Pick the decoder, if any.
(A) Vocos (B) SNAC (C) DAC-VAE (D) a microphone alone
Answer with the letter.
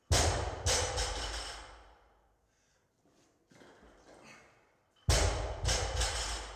D